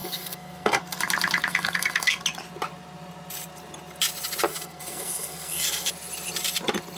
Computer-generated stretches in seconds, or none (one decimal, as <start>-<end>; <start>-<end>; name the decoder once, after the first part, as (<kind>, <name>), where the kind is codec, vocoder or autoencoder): 0.0-1.0 (codec, SNAC); 1.5-2.2; 4.5-5.9